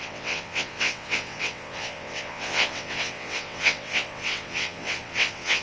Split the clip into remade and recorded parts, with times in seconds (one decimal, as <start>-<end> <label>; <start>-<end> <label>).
0.0-5.6 remade